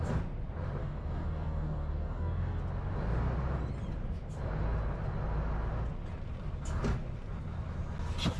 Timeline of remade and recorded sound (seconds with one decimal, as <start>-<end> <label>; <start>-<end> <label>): 0.0-0.8 recorded; 0.8-2.6 remade; 2.6-8.4 recorded